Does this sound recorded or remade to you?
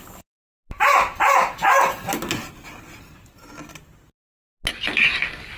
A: recorded